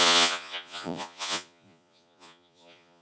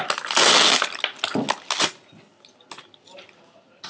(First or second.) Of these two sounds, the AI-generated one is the first